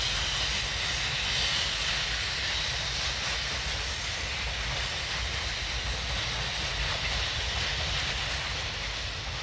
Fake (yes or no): no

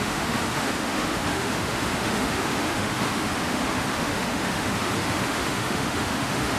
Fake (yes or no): yes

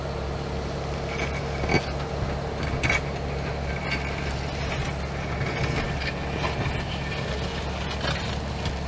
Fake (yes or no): no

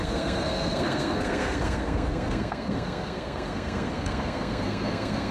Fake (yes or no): yes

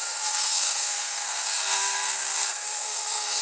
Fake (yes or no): yes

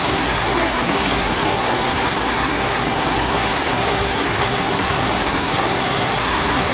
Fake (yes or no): yes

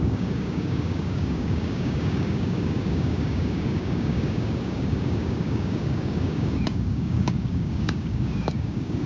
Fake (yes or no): yes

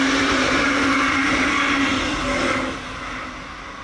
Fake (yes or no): no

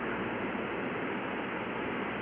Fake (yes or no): no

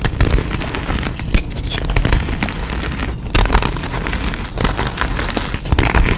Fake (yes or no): no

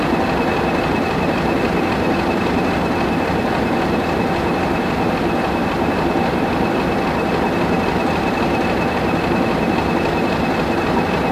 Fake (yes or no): no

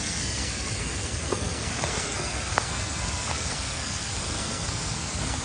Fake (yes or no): yes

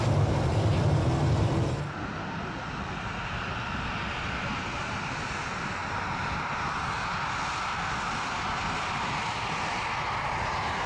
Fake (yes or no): no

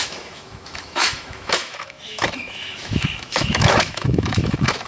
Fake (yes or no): yes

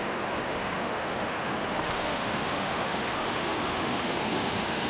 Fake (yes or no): yes